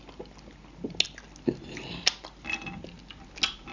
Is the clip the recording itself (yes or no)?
yes